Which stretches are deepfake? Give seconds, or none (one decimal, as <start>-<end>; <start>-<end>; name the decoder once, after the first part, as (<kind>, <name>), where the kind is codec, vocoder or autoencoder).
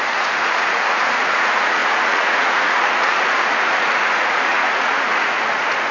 0.0-5.9 (vocoder, Vocos)